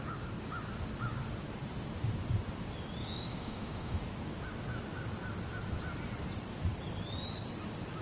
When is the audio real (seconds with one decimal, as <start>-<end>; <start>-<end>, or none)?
0.0-3.0; 4.0-8.0